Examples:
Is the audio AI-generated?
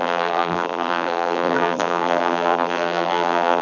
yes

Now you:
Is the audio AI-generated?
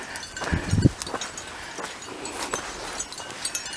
no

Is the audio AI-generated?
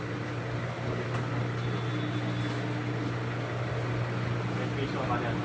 no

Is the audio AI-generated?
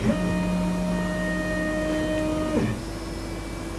no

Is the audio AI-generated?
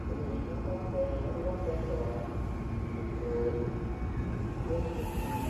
no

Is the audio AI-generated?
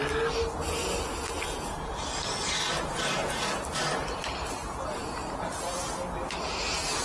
no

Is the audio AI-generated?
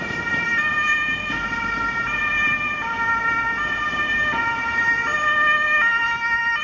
no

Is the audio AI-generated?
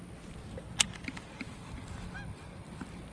no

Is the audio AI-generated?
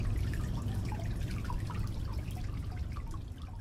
no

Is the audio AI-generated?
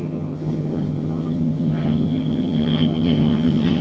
yes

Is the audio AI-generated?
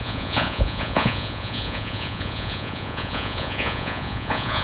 yes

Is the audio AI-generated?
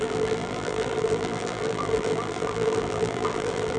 yes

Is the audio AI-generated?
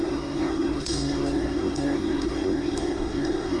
yes